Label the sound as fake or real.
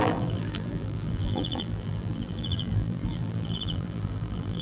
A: fake